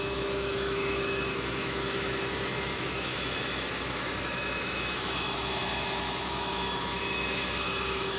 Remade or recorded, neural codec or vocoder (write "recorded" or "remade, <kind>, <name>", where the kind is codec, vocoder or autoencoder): remade, autoencoder, DAC-VAE